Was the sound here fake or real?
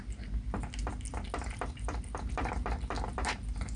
real